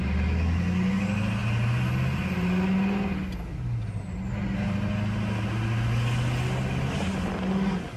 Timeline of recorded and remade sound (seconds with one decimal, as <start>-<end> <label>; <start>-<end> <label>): 0.0-8.0 recorded